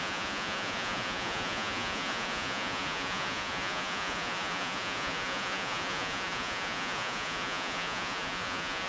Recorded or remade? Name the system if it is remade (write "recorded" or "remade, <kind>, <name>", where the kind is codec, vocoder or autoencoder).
remade, vocoder, Vocos